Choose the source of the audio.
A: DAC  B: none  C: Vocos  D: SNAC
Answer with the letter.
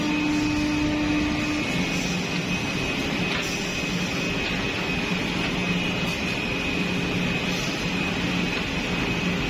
B